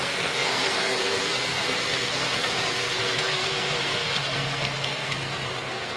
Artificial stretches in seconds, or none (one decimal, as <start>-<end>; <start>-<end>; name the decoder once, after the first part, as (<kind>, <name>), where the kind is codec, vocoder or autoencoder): 0.0-6.0 (codec, SNAC)